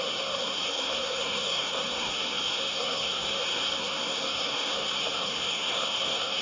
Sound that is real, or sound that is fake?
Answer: fake